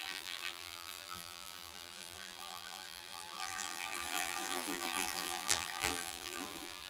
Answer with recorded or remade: remade